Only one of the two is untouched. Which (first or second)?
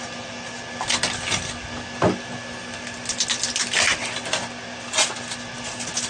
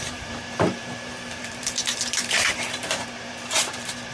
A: first